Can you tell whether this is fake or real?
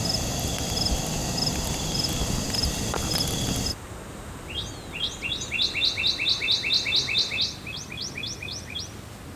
real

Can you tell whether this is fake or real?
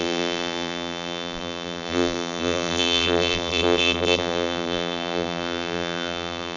fake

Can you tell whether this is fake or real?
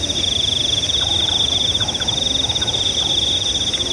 real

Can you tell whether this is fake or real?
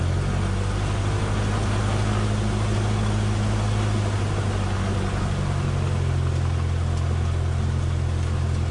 real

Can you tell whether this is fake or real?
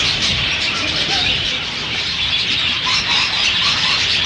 fake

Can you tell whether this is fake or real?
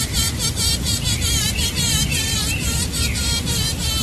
real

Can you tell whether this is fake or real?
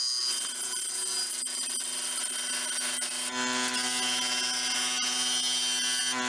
real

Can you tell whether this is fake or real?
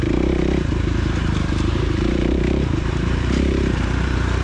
fake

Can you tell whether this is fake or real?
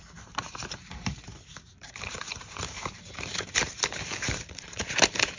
fake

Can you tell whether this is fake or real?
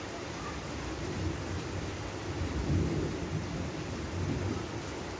fake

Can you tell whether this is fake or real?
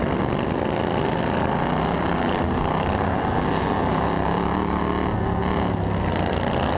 real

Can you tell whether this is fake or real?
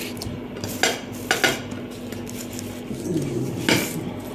real